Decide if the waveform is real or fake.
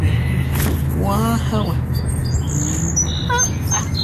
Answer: real